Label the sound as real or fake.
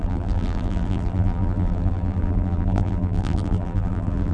fake